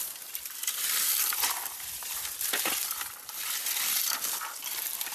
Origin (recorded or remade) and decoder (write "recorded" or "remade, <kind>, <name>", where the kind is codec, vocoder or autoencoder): recorded